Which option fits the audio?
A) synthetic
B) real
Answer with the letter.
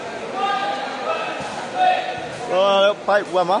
B